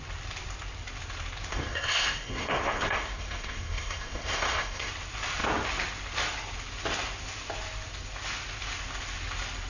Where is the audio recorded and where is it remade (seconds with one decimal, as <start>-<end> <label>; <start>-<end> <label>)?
0.0-1.5 recorded; 1.5-4.9 remade; 4.9-9.7 recorded